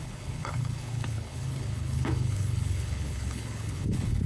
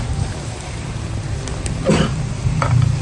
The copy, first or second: first